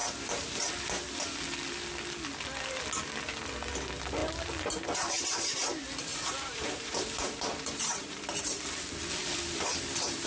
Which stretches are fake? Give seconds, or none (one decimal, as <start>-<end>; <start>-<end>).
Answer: 6.1-8.6